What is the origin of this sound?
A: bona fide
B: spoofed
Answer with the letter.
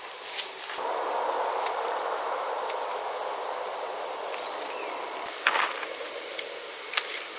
A